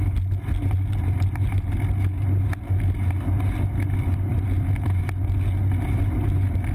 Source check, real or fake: real